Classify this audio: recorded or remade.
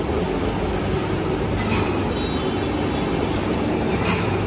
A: recorded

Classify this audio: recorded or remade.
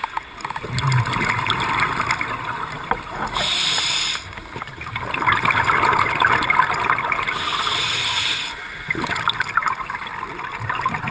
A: recorded